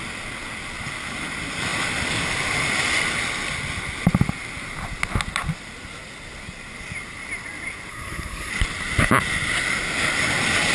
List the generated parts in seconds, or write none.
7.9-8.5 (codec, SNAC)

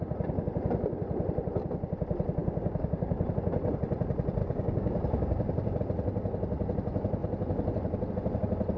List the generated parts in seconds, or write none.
2.4-3.3 (codec, DAC); 4.4-5.8

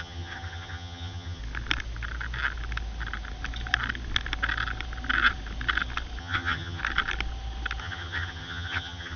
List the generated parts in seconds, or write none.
0.0-1.4 (vocoder, HiFi-GAN); 6.2-6.8; 7.8-9.2

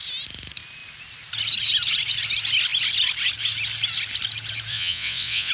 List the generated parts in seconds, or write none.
4.7-5.5 (vocoder, WaveNeXt)

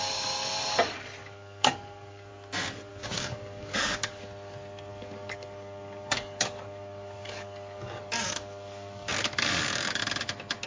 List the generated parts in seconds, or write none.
1.2-2.3 (codec, DAC); 2.9-4.2; 4.9-10.0

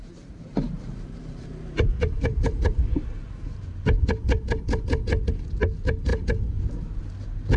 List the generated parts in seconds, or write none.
0.0-3.7 (vocoder, BigVGAN v2)

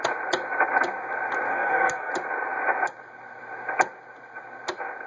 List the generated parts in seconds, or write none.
1.5-2.1 (codec, SNAC)